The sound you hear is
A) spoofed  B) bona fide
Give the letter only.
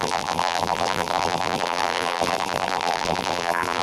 A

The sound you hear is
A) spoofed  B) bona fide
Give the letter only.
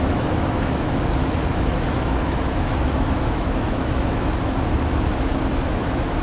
A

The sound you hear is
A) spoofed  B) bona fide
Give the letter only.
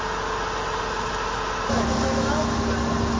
B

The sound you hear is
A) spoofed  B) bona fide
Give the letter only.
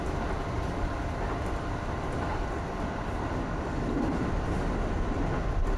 B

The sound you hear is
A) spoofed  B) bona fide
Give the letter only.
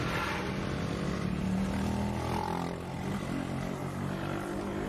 B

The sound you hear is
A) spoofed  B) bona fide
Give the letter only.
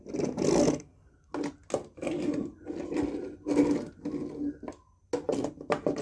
B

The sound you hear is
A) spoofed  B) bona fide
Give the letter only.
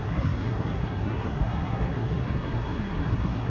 A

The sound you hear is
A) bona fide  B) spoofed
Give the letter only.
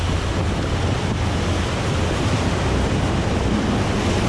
A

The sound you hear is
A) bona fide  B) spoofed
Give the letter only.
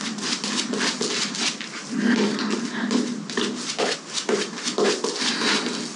A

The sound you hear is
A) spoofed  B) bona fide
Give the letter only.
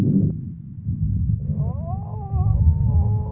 B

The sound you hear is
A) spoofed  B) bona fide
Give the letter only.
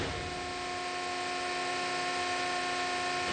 B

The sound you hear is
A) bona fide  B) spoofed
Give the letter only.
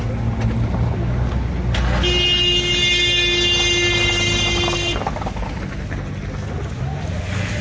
A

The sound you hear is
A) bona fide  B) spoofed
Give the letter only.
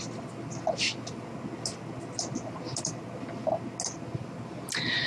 A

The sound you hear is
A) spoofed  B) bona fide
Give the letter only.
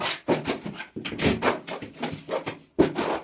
A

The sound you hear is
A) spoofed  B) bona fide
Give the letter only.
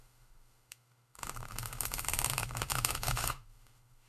A